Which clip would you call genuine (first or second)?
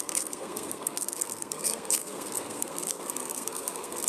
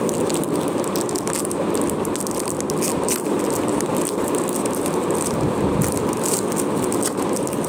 second